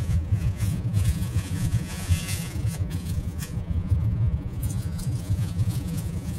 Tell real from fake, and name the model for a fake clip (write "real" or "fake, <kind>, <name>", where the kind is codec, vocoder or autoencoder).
fake, vocoder, Vocos